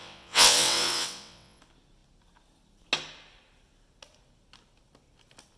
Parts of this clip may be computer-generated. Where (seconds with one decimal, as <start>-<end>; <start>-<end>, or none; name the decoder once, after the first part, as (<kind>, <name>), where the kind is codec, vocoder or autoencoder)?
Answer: 0.0-1.6 (vocoder, WaveNeXt)